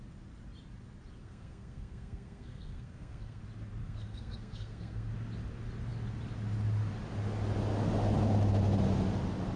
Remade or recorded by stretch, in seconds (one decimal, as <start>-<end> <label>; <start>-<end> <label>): 0.0-1.2 recorded; 1.2-3.4 remade; 3.4-3.8 recorded; 3.8-5.1 remade; 5.1-9.6 recorded